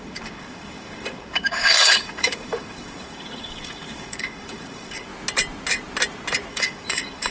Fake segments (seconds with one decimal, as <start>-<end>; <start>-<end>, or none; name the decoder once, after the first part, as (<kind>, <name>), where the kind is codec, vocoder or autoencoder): 0.0-5.1 (codec, DAC); 6.5-7.3